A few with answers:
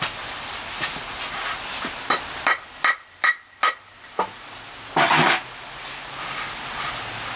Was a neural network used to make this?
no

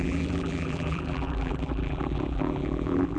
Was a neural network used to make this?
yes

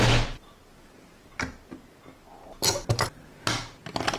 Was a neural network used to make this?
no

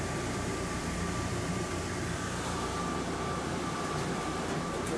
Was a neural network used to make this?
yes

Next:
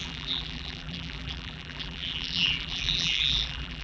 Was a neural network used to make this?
yes